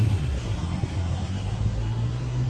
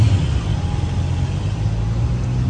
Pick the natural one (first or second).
second